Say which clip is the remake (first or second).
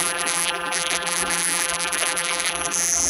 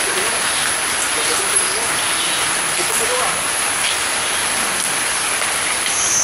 first